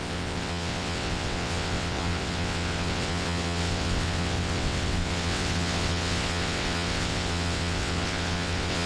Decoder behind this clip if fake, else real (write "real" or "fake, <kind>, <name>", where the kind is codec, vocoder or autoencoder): fake, vocoder, WaveNeXt